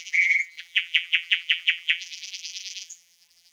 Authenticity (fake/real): fake